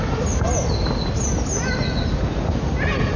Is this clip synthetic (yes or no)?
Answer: no